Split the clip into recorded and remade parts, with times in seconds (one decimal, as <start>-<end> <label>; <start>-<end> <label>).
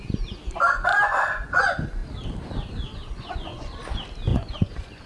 0.0-0.9 recorded; 0.9-1.6 remade; 1.6-3.1 recorded; 3.1-3.8 remade; 3.8-4.3 recorded; 4.3-5.1 remade